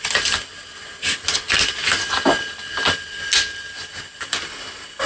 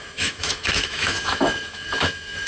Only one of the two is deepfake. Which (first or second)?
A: second